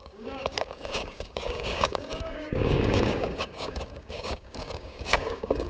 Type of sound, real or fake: fake